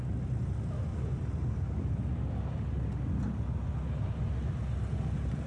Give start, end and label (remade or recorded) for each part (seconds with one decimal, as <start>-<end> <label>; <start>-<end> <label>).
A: 0.0-0.9 recorded; 0.9-1.6 remade; 1.6-5.5 recorded